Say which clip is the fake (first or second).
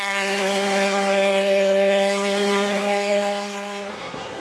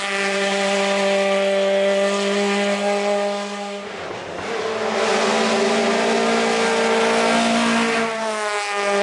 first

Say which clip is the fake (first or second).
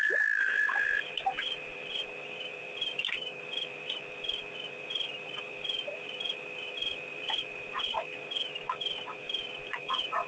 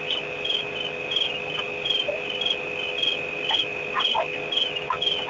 first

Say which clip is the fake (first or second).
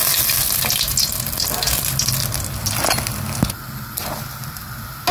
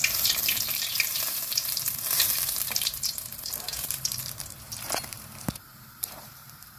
second